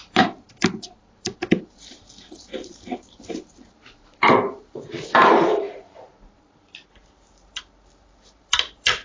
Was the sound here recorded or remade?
remade